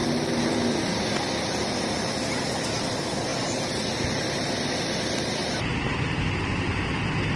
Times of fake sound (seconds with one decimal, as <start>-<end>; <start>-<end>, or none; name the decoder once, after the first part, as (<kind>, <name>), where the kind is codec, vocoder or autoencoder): 3.3-3.9 (vocoder, BigVGAN v2); 5.4-6.7